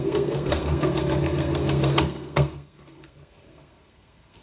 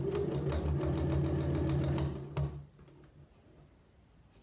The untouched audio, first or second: second